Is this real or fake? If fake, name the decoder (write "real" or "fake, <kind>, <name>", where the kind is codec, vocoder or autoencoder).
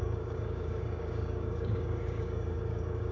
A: fake, codec, DAC